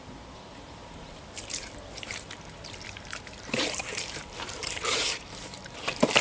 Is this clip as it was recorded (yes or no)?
no